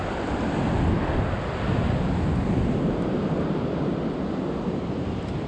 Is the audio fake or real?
real